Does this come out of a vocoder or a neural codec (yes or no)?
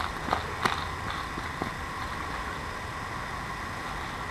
no